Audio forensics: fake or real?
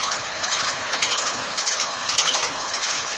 fake